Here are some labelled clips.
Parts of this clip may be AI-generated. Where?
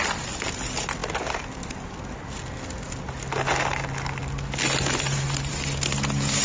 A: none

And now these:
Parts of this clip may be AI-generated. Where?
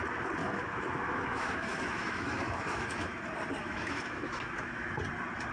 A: 0.4-3.2 (autoencoder, DAC-VAE); 3.6-5.0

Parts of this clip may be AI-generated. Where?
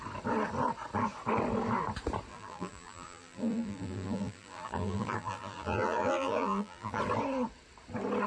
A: 2.3-7.0 (vocoder, BigVGAN v2)